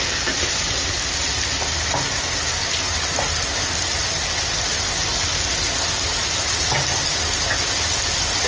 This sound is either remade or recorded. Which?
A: recorded